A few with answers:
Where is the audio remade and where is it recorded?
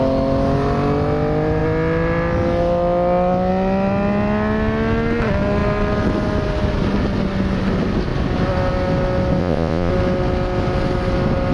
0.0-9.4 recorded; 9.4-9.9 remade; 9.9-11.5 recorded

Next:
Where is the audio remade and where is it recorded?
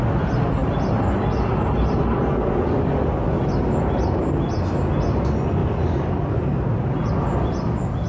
0.0-5.6 recorded; 5.6-7.1 remade; 7.1-8.1 recorded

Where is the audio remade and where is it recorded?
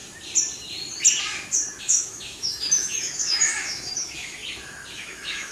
0.0-1.8 recorded; 1.8-4.4 remade; 4.4-4.9 recorded; 4.9-5.5 remade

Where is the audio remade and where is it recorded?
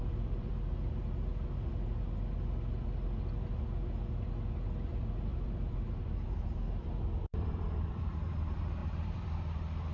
0.0-0.5 remade; 0.5-5.3 recorded; 5.3-8.0 remade; 8.0-8.8 recorded; 8.8-9.4 remade; 9.4-9.9 recorded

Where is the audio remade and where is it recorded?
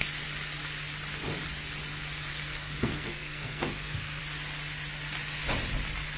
0.0-2.3 recorded; 2.3-4.2 remade; 4.2-6.2 recorded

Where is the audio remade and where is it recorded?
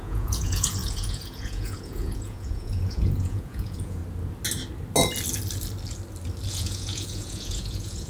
0.0-4.0 remade; 4.0-6.5 recorded; 6.5-8.1 remade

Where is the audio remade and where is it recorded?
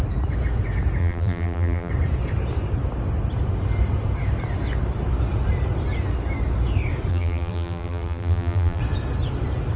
0.0-1.0 recorded; 1.0-1.9 remade; 1.9-7.1 recorded; 7.1-8.8 remade; 8.8-9.8 recorded